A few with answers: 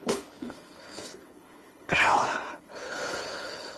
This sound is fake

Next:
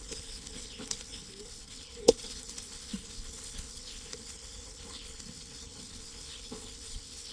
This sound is fake